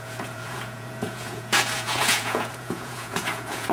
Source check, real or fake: fake